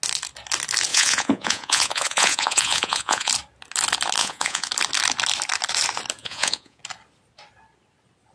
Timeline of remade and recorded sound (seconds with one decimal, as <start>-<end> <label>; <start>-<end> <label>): 0.0-0.9 recorded; 0.9-3.3 remade; 3.3-4.2 recorded; 4.2-4.7 remade; 4.7-6.2 recorded; 6.2-6.8 remade; 6.8-8.3 recorded